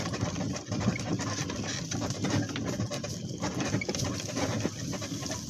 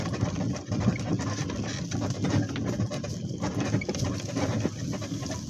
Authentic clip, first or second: second